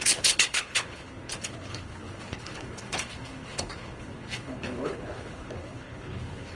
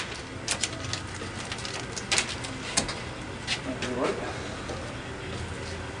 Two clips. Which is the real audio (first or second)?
second